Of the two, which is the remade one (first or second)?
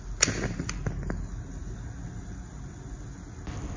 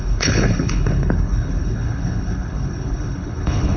second